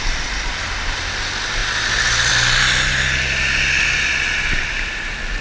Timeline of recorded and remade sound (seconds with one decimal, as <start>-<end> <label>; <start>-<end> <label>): 0.0-5.4 recorded